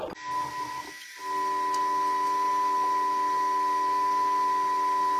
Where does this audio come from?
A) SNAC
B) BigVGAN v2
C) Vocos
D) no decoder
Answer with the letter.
D